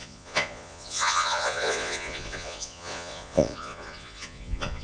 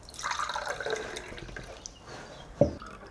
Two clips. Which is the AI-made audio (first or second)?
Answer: first